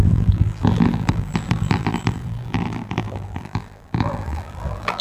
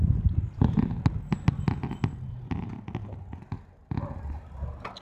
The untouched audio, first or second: second